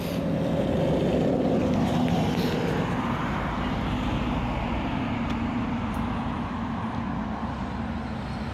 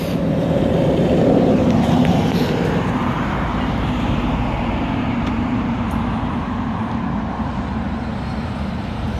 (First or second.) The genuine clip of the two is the first